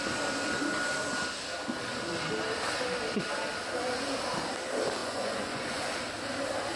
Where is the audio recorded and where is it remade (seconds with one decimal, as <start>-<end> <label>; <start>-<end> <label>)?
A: 0.0-5.0 recorded; 5.0-5.9 remade; 5.9-6.8 recorded